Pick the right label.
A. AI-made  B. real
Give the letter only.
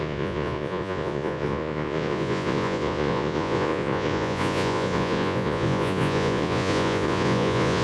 A